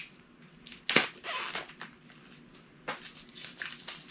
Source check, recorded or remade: recorded